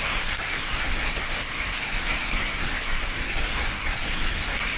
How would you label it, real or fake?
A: fake